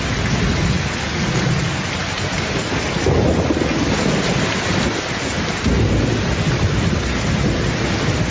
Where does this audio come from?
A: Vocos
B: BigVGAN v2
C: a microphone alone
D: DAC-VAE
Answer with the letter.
C